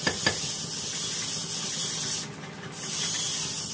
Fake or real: real